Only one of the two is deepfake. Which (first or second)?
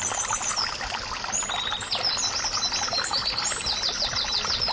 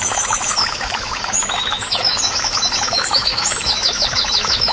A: second